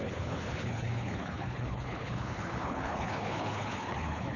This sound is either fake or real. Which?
fake